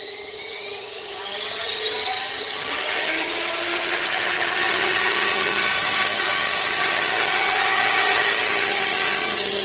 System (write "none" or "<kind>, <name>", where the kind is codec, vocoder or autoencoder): vocoder, HiFi-GAN